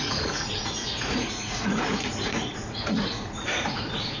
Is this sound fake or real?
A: fake